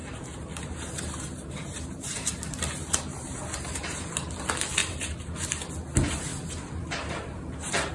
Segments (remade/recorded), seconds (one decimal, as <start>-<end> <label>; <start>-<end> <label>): 0.0-4.1 remade; 4.1-4.8 recorded; 4.8-5.7 remade; 5.7-6.3 recorded; 6.3-7.9 remade

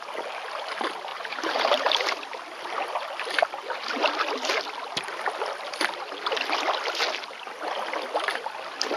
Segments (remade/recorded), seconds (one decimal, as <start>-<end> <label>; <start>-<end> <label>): 0.0-1.1 recorded; 1.1-2.1 remade; 2.1-9.0 recorded

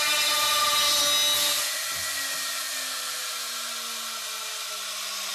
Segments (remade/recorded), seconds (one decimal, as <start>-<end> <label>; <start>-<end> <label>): 0.0-5.3 recorded

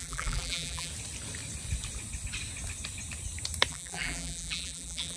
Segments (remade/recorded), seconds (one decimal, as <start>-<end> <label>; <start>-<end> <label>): 0.0-0.9 remade; 0.9-3.7 recorded; 3.7-5.2 remade